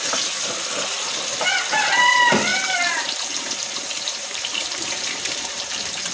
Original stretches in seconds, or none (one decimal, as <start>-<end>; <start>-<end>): 0.0-2.5